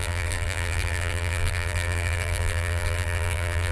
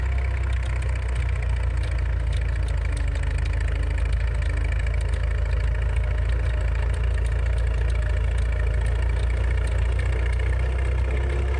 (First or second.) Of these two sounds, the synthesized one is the first